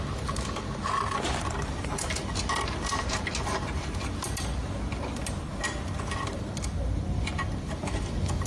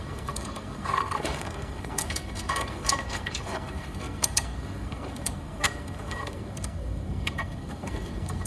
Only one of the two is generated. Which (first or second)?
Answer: second